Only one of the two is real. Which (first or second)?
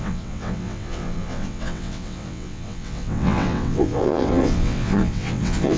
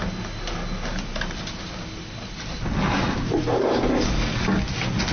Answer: second